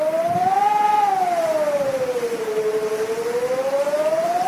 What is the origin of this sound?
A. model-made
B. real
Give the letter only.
A